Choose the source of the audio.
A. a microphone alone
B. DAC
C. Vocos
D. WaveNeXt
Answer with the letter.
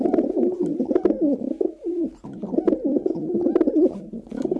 A